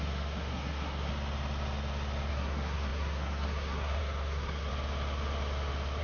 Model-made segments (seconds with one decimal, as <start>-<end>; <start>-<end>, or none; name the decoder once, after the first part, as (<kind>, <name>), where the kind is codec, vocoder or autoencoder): 0.0-1.1 (codec, SNAC); 2.3-4.7

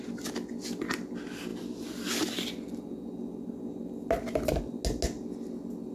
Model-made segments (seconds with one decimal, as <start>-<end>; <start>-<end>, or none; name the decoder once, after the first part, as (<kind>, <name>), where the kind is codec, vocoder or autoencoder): none

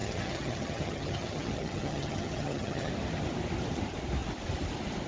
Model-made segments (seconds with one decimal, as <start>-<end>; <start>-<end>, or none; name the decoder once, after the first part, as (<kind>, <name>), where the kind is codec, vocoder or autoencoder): 0.0-2.9 (vocoder, HiFi-GAN)

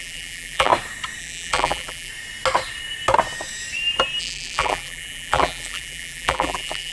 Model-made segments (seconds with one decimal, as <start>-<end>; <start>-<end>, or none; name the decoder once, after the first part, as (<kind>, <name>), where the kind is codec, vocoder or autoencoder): 0.0-0.7 (vocoder, BigVGAN v2); 1.2-2.1; 4.2-6.9

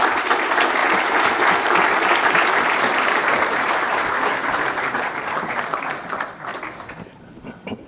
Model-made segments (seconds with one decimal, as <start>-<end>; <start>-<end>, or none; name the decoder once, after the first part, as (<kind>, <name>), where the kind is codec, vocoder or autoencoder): 0.8-5.5 (vocoder, BigVGAN v2); 6.5-7.2

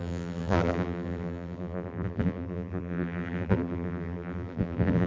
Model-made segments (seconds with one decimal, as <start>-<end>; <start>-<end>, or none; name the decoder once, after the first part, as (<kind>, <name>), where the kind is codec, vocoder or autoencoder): 0.0-5.1 (vocoder, BigVGAN v2)

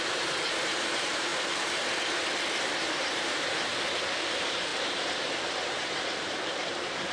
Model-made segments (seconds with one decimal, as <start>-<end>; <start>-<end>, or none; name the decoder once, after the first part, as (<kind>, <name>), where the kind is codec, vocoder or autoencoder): 0.0-1.3 (vocoder, BigVGAN v2); 2.6-3.7; 4.3-7.1